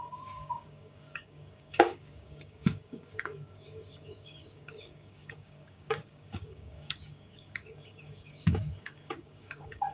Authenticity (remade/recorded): remade